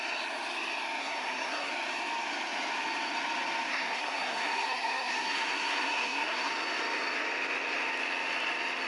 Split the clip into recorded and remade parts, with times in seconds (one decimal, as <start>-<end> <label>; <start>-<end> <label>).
0.0-1.0 recorded; 1.0-1.7 remade; 1.7-3.7 recorded; 3.7-6.5 remade; 6.5-8.9 recorded